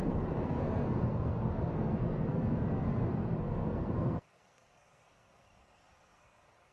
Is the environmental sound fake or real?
fake